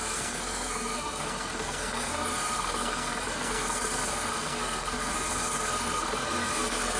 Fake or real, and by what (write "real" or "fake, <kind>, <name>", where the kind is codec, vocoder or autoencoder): fake, codec, SNAC